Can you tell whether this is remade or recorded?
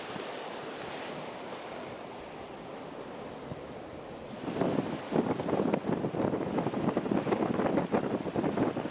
recorded